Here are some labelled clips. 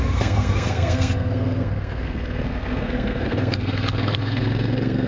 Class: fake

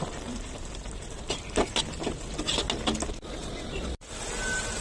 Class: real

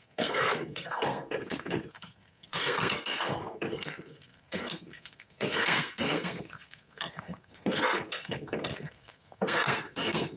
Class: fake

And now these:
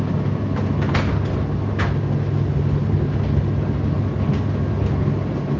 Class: real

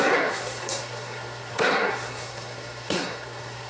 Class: fake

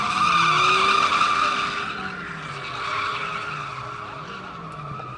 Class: real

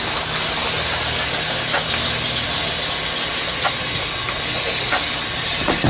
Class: real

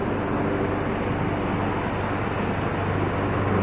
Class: real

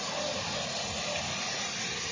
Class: real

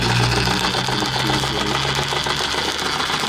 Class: real